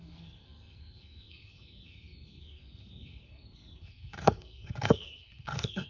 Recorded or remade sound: remade